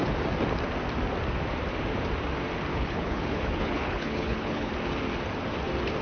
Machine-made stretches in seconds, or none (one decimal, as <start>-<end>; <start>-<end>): 2.7-4.7